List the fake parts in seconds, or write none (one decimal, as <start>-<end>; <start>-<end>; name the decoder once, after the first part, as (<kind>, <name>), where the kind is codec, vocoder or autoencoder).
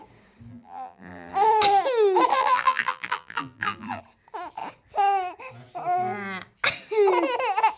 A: 0.5-1.3 (vocoder, BigVGAN v2); 2.3-4.0